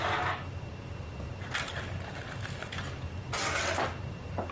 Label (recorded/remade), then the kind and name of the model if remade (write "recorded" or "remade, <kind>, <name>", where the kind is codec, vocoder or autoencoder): recorded